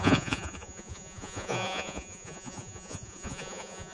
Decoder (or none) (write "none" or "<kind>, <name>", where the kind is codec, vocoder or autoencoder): vocoder, Vocos